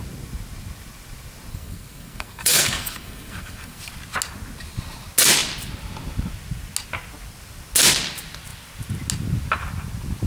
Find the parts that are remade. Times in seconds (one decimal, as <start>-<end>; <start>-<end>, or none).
1.5-3.9